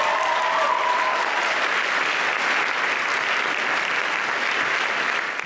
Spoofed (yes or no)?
no